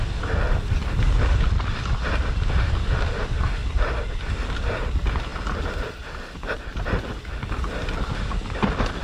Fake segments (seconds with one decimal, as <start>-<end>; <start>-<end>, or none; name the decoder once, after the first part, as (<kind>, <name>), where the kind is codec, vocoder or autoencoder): 3.6-4.3 (vocoder, BigVGAN v2)